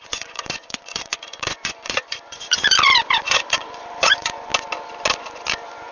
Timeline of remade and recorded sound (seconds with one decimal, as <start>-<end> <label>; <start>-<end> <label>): 0.0-4.5 remade; 4.5-5.1 recorded; 5.1-5.9 remade